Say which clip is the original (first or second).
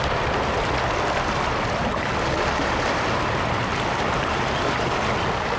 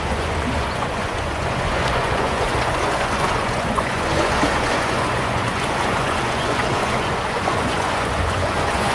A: first